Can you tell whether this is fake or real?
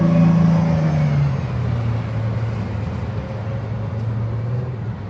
real